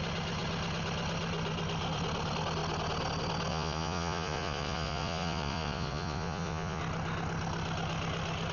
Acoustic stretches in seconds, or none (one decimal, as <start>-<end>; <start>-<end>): 0.0-3.5; 6.8-8.5